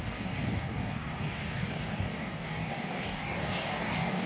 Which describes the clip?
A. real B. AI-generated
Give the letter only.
B